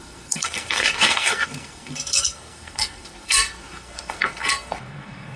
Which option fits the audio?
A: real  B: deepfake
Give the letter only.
B